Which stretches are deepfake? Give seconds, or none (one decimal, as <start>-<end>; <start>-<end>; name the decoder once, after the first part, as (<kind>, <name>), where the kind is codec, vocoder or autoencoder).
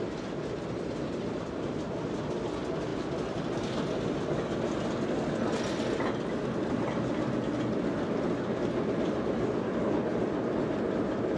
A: none